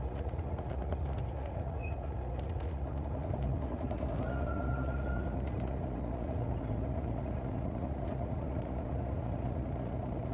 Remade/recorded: remade